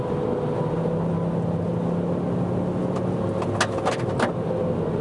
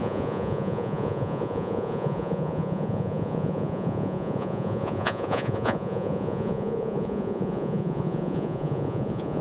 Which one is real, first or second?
first